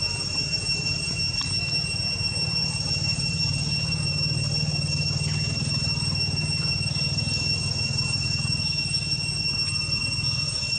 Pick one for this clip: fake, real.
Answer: real